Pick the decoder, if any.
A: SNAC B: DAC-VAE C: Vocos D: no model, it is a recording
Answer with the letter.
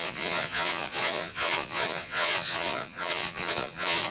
C